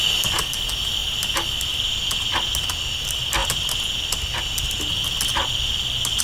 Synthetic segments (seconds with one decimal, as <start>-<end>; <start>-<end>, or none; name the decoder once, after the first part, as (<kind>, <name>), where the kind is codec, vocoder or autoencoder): none